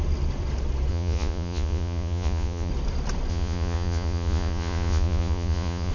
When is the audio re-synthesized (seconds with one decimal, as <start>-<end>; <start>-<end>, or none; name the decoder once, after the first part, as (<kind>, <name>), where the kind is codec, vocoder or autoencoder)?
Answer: 0.9-2.7 (vocoder, Vocos); 3.3-5.9